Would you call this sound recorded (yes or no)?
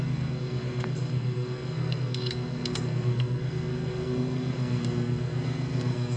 no